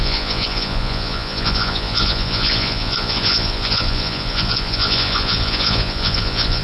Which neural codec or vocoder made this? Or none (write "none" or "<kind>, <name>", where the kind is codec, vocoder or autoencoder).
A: vocoder, Vocos